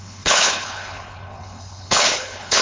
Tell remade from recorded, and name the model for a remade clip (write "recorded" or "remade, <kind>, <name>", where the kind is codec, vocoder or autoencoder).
remade, codec, HILCodec